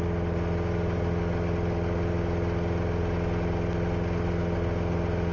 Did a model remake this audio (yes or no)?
no